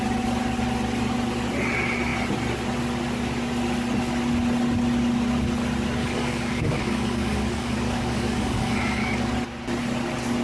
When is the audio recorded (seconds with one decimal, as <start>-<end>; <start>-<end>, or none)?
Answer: 0.0-6.0; 9.3-10.4